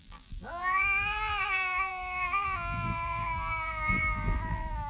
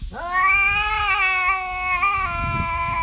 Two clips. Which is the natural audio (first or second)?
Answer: second